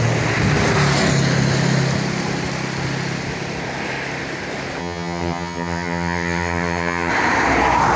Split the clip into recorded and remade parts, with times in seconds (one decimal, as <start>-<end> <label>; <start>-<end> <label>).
0.0-4.8 recorded; 4.8-7.1 remade; 7.1-8.0 recorded

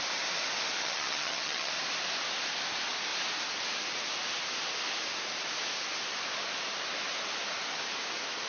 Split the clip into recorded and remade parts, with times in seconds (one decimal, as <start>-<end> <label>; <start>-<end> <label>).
0.0-0.8 recorded; 0.8-1.7 remade; 1.7-8.5 recorded

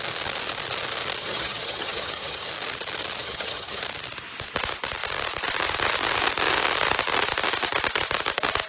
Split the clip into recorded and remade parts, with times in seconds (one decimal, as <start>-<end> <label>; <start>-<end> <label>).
0.0-1.2 recorded; 1.2-2.5 remade; 2.5-3.2 recorded; 3.2-3.8 remade; 3.8-8.7 recorded